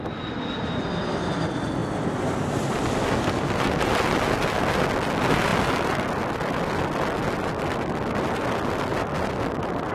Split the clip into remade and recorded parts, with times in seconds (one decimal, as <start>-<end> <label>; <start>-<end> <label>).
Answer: 0.0-9.9 recorded